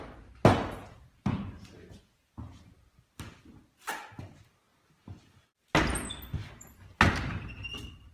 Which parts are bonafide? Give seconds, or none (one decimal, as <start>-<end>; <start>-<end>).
0.0-8.1